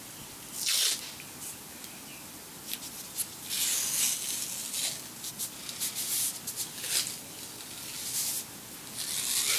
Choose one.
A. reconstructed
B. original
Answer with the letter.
B